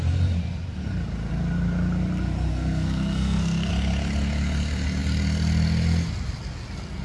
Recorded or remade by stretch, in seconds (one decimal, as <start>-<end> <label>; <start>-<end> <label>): 0.0-2.5 recorded; 2.5-3.7 remade; 3.7-7.0 recorded